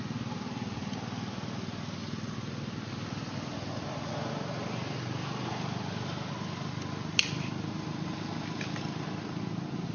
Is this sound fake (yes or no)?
no